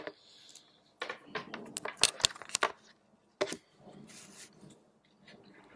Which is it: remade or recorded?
recorded